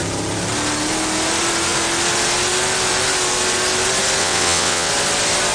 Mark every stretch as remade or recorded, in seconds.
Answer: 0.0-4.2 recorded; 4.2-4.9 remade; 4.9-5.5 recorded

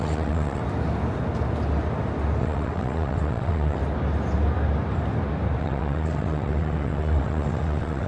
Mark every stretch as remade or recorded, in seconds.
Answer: 0.0-0.6 remade; 0.6-2.4 recorded; 2.4-3.8 remade; 3.8-5.6 recorded; 5.6-8.1 remade